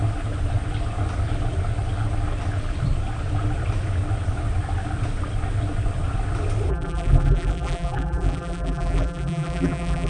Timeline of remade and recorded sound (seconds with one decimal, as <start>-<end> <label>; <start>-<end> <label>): 0.0-6.7 recorded; 6.7-10.1 remade